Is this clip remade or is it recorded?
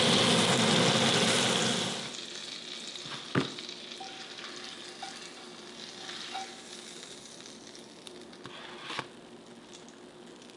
recorded